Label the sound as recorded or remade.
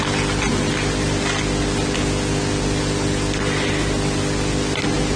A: recorded